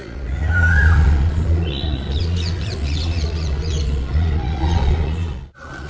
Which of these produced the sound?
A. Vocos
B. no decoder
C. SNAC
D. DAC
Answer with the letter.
A